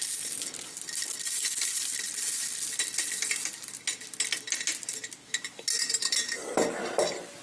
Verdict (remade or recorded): recorded